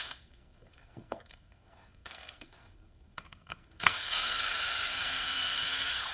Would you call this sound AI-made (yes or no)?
yes